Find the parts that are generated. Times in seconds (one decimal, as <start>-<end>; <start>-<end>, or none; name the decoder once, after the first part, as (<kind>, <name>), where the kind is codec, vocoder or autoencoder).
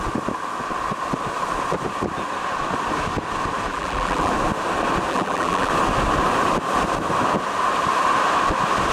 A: 3.7-4.3 (vocoder, BigVGAN v2); 5.1-5.7